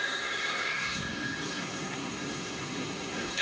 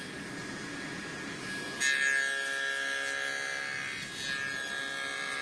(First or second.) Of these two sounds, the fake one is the first